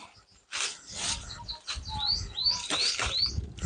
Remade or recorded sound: recorded